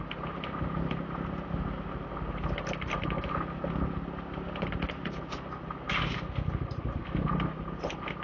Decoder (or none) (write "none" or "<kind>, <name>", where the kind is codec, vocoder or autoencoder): none